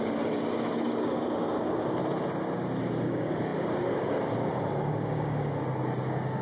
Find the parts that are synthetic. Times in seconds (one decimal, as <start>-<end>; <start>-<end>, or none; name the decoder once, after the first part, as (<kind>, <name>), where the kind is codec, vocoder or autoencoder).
0.0-2.0 (codec, DAC); 2.8-6.4